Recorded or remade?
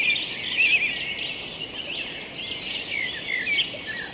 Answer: recorded